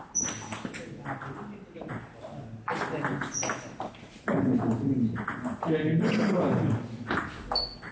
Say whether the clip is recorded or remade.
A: recorded